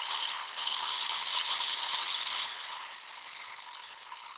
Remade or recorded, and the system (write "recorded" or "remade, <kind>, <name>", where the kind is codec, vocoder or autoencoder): remade, codec, HILCodec